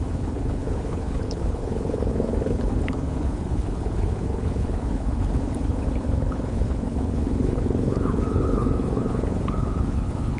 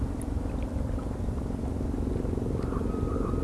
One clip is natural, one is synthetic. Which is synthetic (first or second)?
first